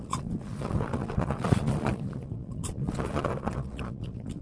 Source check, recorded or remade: remade